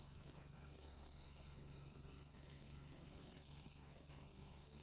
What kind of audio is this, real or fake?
fake